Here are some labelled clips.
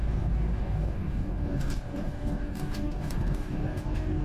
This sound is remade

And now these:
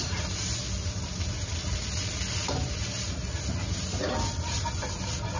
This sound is recorded